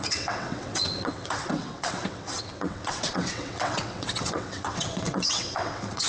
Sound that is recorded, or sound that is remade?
remade